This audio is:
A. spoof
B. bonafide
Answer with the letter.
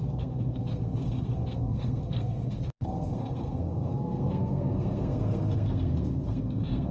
A